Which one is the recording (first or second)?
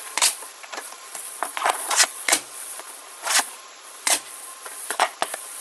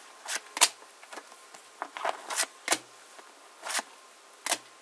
second